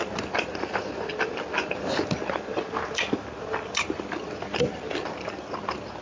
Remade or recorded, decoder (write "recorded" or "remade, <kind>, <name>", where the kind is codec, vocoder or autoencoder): recorded